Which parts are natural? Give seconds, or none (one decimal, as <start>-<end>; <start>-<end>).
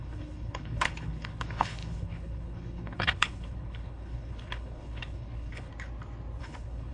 5.7-6.4